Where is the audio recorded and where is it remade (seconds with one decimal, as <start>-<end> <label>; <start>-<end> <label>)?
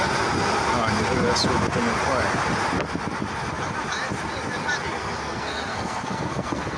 0.0-5.0 recorded; 5.0-6.8 remade